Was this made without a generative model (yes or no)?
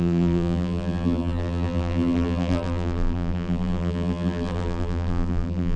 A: no